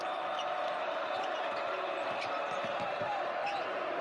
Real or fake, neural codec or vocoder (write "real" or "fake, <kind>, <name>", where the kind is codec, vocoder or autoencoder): fake, vocoder, BigVGAN v2